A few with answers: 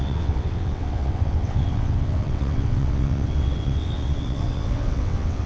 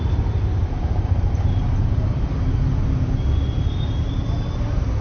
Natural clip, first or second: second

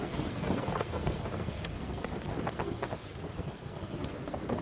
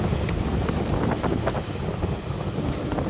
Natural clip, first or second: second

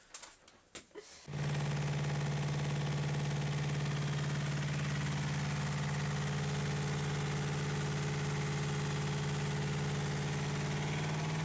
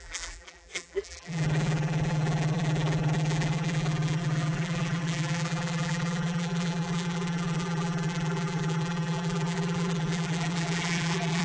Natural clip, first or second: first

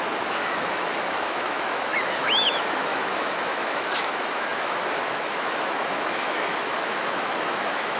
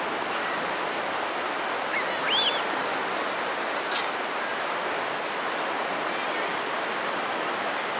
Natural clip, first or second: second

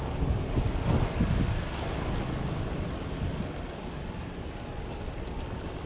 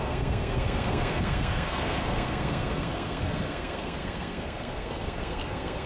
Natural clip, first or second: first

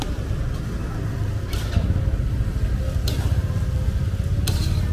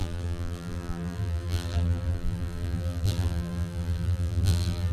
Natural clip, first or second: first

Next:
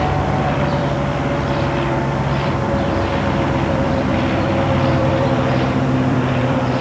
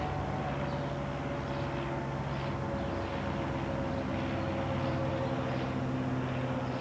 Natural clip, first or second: second